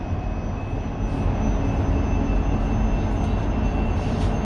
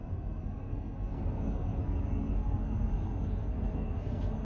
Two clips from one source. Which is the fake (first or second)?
second